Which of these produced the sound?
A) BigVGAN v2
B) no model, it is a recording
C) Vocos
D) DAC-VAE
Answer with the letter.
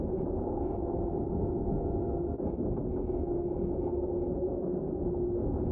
B